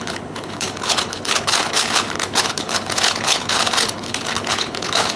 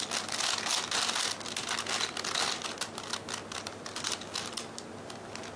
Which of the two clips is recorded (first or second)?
second